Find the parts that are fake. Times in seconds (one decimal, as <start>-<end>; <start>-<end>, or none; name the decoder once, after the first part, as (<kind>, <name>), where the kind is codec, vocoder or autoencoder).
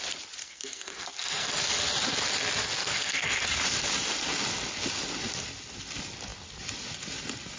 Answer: 0.4-1.6 (codec, SNAC); 2.8-3.5